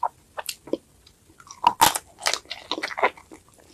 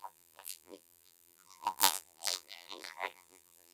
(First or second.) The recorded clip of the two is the first